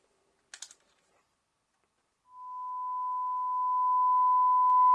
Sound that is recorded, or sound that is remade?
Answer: recorded